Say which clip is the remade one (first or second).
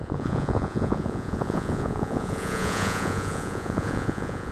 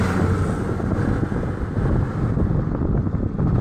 first